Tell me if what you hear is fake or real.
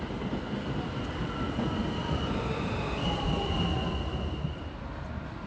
real